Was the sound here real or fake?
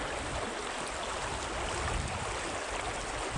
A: real